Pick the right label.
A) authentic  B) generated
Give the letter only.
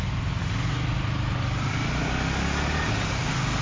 A